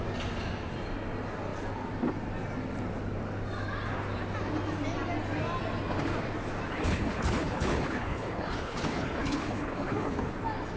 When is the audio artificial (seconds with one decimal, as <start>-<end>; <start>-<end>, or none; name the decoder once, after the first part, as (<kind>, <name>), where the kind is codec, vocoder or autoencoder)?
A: 6.7-10.3 (codec, HILCodec)